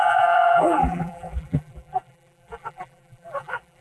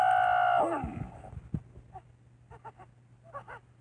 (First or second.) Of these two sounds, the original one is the second